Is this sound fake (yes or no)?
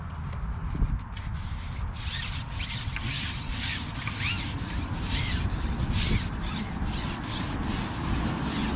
no